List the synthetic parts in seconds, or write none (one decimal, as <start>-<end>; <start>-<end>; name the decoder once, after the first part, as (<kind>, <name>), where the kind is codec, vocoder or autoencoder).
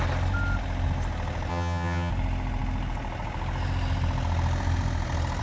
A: 1.5-2.1 (vocoder, HiFi-GAN)